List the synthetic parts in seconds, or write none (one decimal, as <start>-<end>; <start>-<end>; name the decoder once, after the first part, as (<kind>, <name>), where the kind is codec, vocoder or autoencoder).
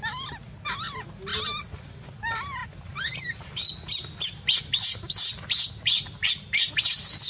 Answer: none